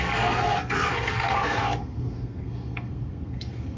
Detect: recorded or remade remade